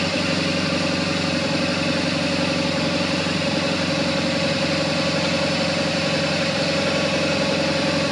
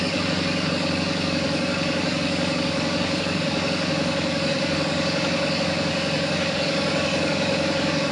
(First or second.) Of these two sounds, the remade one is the second